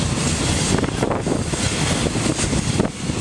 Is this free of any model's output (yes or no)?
yes